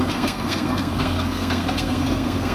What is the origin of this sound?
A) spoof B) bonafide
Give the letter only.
A